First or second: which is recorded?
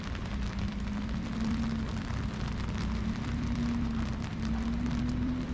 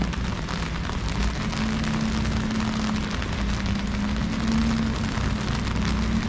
second